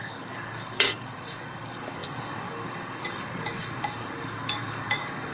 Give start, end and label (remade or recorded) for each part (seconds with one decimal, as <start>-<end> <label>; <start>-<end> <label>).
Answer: 0.0-5.3 remade